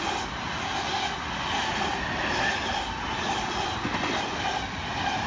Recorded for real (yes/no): yes